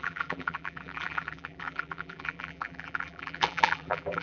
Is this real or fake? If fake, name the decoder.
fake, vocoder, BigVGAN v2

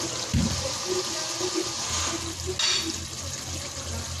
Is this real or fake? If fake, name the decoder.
real